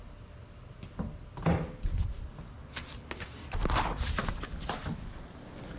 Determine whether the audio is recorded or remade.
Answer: recorded